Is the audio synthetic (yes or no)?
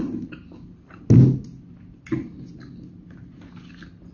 no